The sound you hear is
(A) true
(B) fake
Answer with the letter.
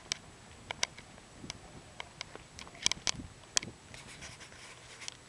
A